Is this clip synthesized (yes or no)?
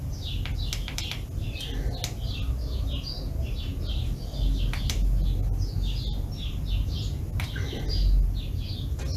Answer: no